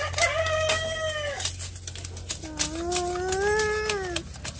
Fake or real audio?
real